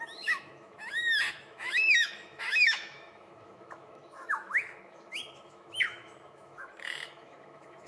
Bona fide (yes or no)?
no